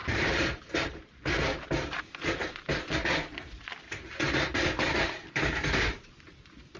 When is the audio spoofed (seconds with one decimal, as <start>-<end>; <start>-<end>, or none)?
0.0-0.6